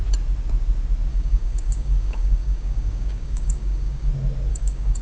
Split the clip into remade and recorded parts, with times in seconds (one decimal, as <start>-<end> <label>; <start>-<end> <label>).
0.0-1.1 recorded; 1.1-4.1 remade; 4.1-4.5 recorded; 4.5-5.0 remade